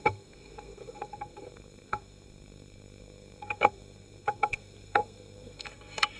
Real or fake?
fake